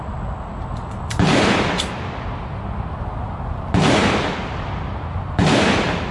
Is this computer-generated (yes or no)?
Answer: no